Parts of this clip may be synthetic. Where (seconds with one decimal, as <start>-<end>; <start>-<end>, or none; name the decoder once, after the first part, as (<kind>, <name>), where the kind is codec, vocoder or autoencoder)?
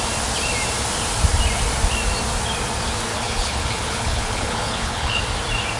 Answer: 3.1-5.2 (codec, HILCodec)